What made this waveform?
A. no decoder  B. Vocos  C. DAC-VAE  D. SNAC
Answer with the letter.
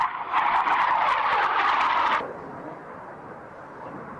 A